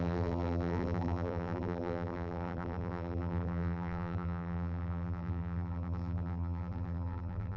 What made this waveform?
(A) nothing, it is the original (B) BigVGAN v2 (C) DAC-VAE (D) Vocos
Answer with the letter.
B